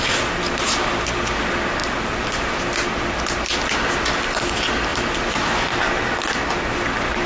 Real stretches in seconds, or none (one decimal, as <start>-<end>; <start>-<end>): 0.0-7.3